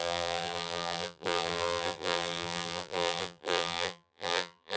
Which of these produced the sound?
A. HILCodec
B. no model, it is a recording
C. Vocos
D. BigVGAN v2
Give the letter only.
D